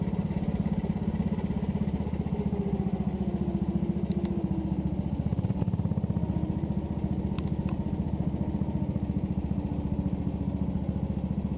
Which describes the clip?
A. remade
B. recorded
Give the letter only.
B